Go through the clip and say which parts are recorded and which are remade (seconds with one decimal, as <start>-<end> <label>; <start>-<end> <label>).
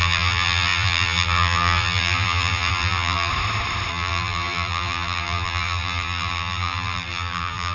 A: 0.0-3.3 remade; 3.3-3.9 recorded; 3.9-7.7 remade